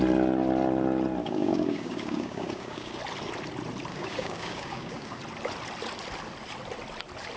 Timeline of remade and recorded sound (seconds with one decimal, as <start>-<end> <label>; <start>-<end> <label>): 0.0-1.2 recorded; 1.2-3.0 remade; 3.0-3.9 recorded; 3.9-5.2 remade; 5.2-7.4 recorded